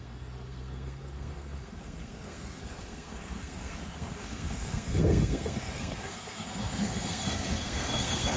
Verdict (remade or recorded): remade